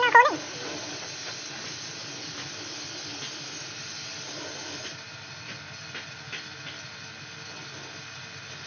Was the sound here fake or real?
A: real